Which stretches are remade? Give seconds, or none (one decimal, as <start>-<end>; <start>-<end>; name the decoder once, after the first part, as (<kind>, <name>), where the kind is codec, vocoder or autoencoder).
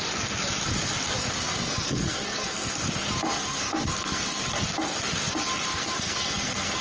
1.5-2.8 (codec, SNAC); 3.3-4.4; 5.7-6.8